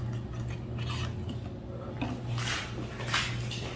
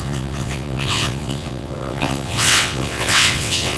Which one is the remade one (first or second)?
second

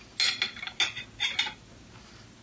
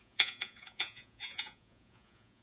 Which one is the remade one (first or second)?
second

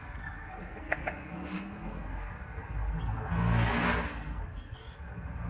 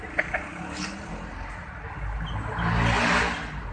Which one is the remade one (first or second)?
first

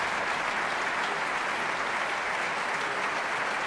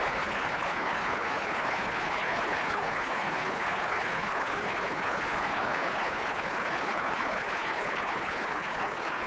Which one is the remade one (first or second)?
second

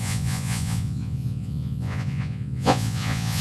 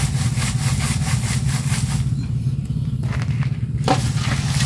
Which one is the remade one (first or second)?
first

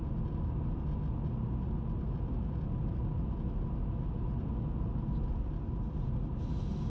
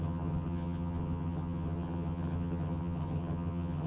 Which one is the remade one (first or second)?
second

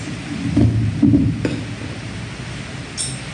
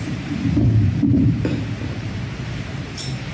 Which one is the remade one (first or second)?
second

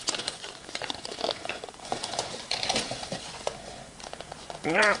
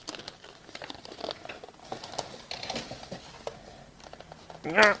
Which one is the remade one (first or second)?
first